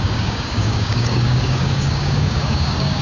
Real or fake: fake